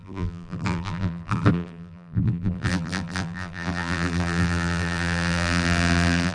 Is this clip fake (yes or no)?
yes